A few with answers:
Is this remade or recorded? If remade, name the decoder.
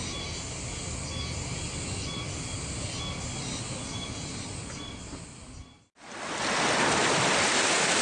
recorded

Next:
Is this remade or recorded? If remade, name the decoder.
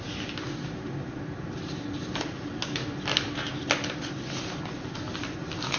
recorded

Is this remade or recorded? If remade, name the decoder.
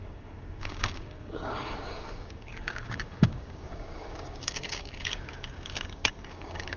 remade, codec, DAC